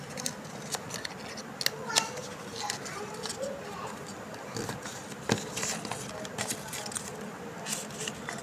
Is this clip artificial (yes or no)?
no